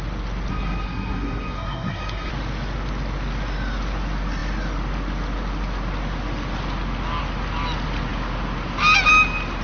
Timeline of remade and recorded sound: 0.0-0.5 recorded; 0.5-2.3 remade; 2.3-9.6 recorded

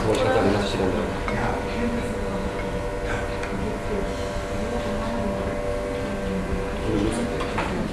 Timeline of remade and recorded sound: 0.0-7.9 recorded